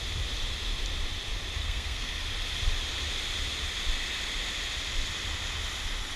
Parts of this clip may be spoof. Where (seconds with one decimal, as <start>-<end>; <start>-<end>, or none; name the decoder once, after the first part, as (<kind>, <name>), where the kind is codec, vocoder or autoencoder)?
1.6-2.1 (codec, SNAC)